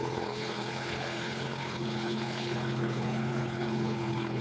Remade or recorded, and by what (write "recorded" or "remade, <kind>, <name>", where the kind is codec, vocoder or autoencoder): remade, codec, HILCodec